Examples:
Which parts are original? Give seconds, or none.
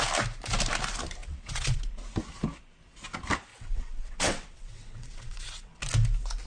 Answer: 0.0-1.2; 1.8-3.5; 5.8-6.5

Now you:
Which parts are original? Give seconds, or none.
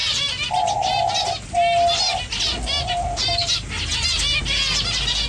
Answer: 0.0-5.3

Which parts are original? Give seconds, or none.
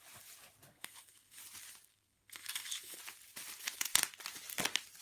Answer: 0.0-0.7; 1.4-1.9; 3.0-5.0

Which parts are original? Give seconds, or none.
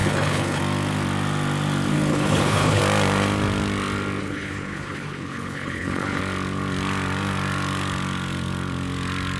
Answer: 0.6-2.1; 2.8-4.2; 6.2-9.4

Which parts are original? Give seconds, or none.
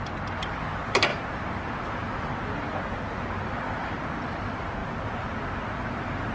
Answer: 0.0-6.3